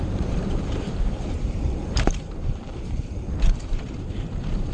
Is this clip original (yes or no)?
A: no